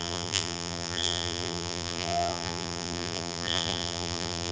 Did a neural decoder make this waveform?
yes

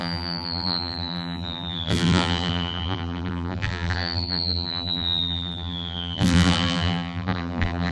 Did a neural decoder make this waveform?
yes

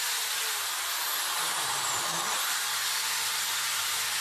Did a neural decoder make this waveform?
no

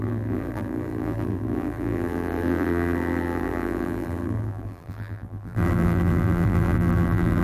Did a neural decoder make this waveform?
yes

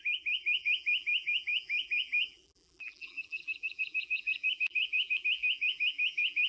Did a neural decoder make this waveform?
yes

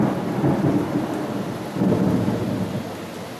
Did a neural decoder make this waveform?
no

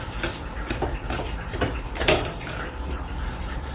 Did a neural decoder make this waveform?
yes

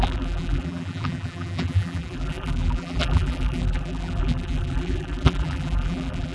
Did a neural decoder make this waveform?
yes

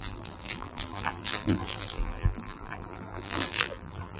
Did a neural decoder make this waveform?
yes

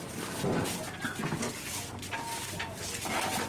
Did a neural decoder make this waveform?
no